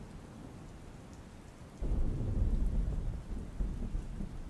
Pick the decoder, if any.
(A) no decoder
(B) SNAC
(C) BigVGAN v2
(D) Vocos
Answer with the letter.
A